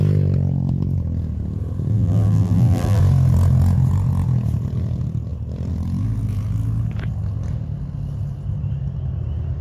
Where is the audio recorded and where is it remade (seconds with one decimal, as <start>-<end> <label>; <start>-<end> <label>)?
0.0-1.9 recorded; 1.9-3.0 remade; 3.0-9.6 recorded